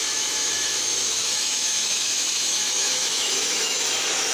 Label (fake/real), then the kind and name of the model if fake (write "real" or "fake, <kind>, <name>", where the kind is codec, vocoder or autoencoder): fake, autoencoder, DAC-VAE